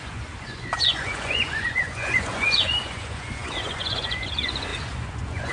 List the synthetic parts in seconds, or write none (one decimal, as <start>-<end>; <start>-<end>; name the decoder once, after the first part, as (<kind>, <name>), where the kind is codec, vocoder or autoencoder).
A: 0.0-5.5 (vocoder, Vocos)